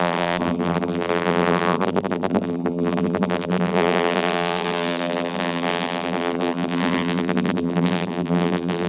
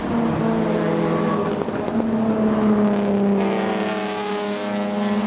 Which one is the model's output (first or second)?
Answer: first